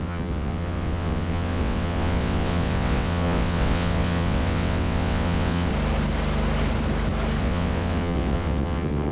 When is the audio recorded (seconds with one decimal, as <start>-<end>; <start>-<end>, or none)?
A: 5.7-7.4